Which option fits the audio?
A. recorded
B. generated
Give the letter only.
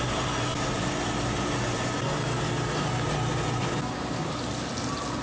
A